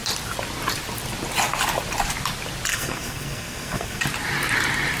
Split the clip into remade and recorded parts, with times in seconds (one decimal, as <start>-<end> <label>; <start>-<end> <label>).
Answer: 0.0-2.7 recorded; 2.7-4.0 remade; 4.0-5.0 recorded